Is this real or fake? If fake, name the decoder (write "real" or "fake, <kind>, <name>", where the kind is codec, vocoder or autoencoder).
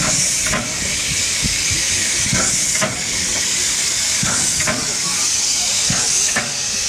fake, codec, DAC